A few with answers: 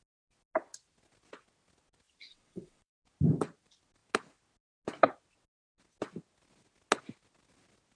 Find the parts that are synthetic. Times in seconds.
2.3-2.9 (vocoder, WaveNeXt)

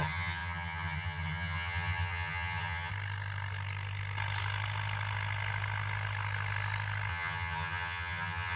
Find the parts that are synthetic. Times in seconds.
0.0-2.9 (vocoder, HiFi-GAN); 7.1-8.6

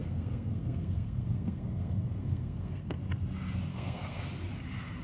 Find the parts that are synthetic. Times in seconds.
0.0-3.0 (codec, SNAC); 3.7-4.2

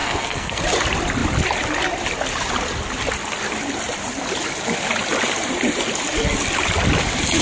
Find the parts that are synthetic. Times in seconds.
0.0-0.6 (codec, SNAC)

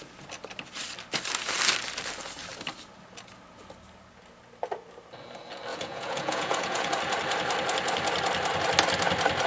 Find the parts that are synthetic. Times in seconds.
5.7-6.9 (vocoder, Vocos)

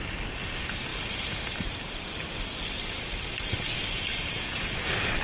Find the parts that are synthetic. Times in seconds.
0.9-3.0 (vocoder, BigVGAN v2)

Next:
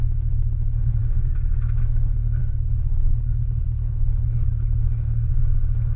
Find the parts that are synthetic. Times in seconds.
2.4-4.5 (codec, HILCodec)